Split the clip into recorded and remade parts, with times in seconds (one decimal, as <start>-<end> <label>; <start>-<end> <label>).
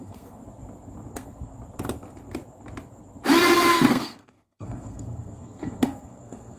0.0-0.4 remade; 0.4-1.1 recorded; 1.1-1.5 remade; 1.5-3.9 recorded; 3.9-6.6 remade